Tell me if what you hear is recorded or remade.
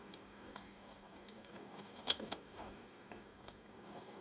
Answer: remade